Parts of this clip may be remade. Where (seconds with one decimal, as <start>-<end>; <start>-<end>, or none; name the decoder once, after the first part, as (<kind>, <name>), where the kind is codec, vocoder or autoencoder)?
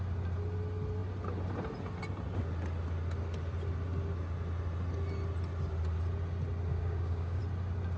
6.7-7.4 (codec, DAC)